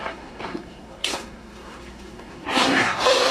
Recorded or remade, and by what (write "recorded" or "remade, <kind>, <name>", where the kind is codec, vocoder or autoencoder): remade, codec, SNAC